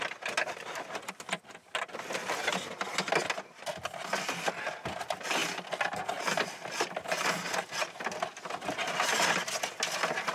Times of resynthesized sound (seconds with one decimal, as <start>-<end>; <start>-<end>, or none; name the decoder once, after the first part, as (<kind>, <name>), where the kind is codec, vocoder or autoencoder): none